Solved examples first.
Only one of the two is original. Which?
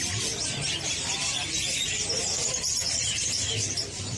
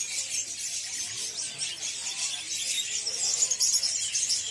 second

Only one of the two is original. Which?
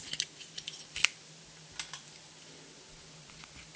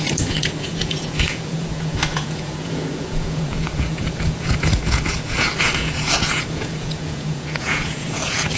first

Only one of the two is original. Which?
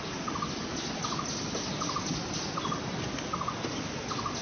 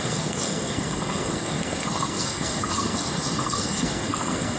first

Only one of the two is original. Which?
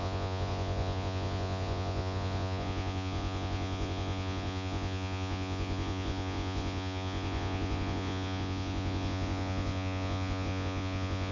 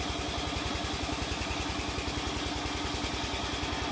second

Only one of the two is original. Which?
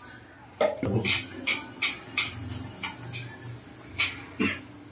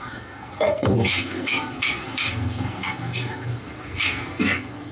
first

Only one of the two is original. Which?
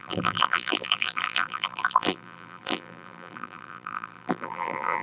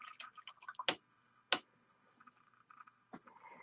second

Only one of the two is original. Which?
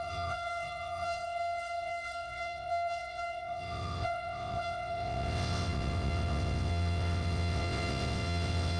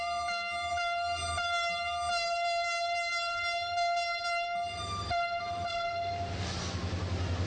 second